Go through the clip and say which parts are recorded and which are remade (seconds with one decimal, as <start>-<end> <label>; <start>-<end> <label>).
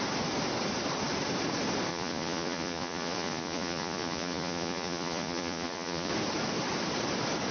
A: 0.0-1.9 recorded; 1.9-6.1 remade; 6.1-7.5 recorded